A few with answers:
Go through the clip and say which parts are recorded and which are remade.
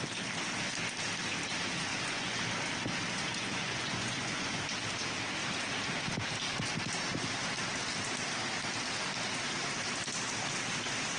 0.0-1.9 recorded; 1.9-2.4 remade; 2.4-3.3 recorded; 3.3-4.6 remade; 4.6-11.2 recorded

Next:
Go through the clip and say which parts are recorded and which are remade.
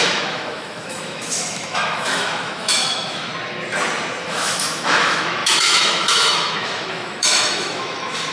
0.0-3.3 remade; 3.3-4.2 recorded; 4.2-8.3 remade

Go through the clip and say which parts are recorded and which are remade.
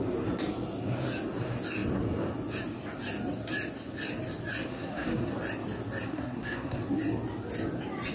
0.0-4.7 recorded; 4.7-5.3 remade; 5.3-6.1 recorded; 6.1-6.8 remade; 6.8-8.1 recorded